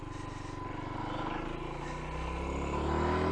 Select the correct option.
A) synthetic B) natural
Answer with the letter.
B